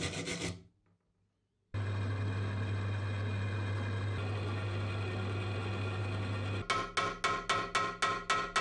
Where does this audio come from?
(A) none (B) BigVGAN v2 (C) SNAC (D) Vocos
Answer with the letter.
A